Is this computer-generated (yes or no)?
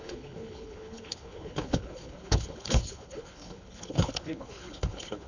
yes